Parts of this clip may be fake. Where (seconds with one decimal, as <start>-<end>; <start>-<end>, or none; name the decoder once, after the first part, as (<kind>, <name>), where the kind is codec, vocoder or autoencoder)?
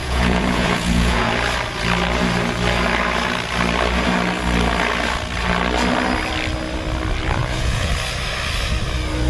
0.0-1.3 (vocoder, Vocos); 7.4-7.9